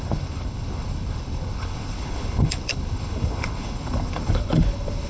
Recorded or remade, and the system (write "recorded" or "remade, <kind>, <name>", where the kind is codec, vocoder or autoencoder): remade, codec, HILCodec